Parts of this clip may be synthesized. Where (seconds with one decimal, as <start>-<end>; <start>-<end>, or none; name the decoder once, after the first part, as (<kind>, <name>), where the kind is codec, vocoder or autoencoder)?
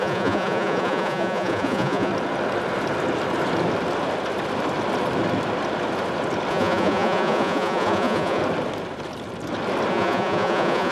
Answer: 0.0-2.1 (vocoder, Vocos); 6.5-8.4; 9.9-10.9